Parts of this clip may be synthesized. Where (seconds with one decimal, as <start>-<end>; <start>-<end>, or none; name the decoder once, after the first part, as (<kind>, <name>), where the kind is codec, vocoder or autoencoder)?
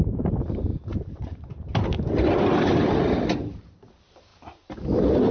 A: none